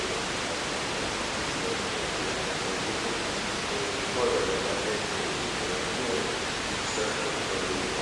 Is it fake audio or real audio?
real